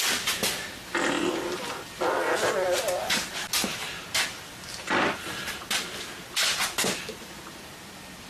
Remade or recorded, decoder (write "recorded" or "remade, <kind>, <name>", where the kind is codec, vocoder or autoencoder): recorded